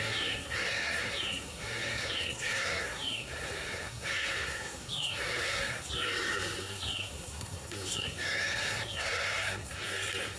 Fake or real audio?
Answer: fake